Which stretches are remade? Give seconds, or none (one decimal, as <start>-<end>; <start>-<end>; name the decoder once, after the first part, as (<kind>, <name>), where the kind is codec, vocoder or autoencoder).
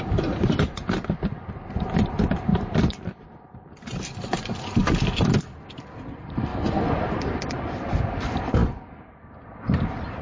0.0-2.5 (vocoder, BigVGAN v2); 4.0-4.8; 5.4-10.2